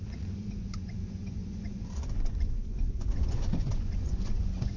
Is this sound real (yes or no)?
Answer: no